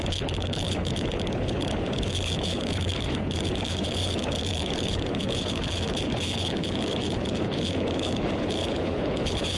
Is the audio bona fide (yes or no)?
no